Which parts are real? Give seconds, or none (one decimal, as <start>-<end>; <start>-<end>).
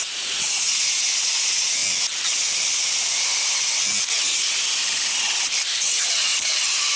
1.8-5.6; 6.3-7.0